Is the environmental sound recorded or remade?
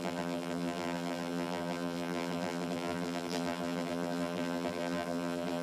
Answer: remade